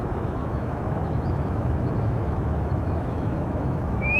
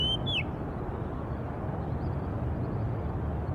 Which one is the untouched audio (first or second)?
second